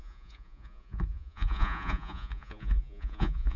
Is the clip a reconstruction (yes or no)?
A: yes